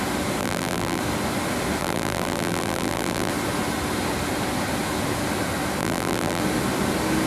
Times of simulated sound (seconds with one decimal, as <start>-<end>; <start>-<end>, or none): 0.4-1.0; 1.8-3.3; 5.8-6.4